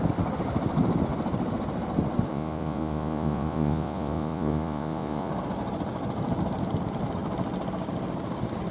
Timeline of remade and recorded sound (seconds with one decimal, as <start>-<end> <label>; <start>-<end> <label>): 0.0-2.3 recorded; 2.3-5.3 remade; 5.3-8.7 recorded